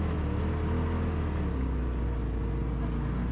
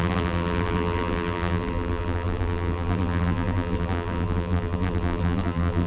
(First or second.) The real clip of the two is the first